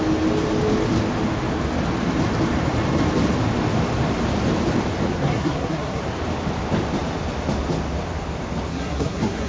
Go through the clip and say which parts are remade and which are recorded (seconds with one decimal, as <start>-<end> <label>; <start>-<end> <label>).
0.0-5.1 recorded; 5.1-6.0 remade; 6.0-8.7 recorded; 8.7-9.5 remade